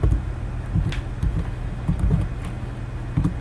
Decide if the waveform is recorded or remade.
recorded